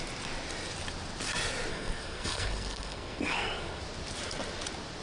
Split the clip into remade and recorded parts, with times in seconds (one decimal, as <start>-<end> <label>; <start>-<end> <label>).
0.0-1.7 recorded; 1.7-3.8 remade; 3.8-5.0 recorded